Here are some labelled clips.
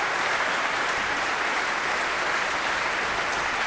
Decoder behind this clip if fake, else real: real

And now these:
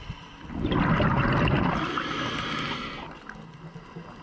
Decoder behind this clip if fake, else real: real